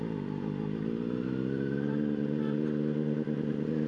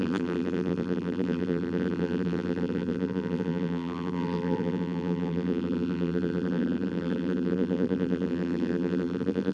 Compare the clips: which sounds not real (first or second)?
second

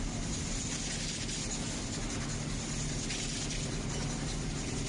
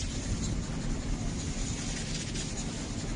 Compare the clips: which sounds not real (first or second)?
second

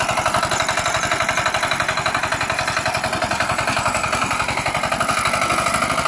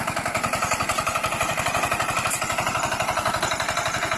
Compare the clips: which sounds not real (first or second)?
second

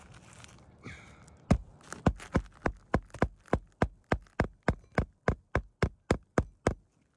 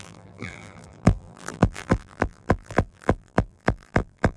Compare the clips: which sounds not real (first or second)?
second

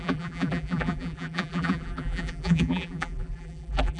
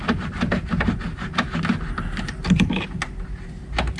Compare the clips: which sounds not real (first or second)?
first